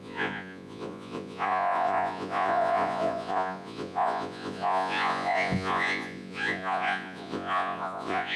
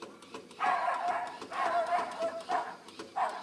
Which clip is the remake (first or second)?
first